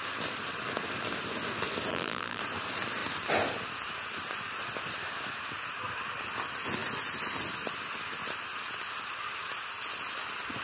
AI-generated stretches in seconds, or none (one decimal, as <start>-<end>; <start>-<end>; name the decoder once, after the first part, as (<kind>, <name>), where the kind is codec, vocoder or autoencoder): 1.9-2.4 (vocoder, BigVGAN v2)

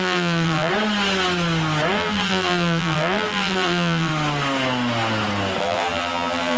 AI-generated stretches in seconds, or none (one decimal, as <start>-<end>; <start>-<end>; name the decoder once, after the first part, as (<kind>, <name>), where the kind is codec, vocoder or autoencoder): 0.0-0.7 (vocoder, BigVGAN v2); 1.9-4.1; 5.6-6.6

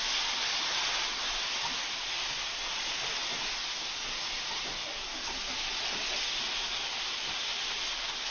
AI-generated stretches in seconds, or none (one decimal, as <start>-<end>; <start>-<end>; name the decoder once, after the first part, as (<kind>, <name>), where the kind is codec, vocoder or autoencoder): none

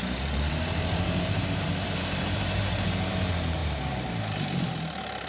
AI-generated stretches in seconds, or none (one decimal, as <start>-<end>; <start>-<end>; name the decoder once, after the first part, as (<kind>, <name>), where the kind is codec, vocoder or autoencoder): 0.0-5.3 (vocoder, BigVGAN v2)

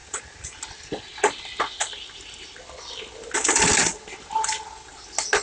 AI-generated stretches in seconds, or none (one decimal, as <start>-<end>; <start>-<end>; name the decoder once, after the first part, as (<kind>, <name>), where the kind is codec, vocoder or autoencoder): 0.0-0.6 (vocoder, BigVGAN v2)

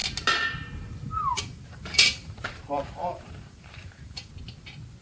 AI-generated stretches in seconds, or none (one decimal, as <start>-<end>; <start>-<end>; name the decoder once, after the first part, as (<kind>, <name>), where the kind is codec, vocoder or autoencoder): 1.3-4.3 (vocoder, BigVGAN v2)